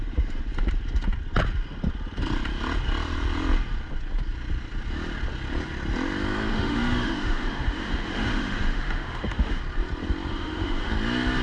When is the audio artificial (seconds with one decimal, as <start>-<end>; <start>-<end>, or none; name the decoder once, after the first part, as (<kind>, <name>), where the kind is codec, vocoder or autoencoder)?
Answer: 6.5-9.6 (autoencoder, DAC-VAE); 10.3-10.9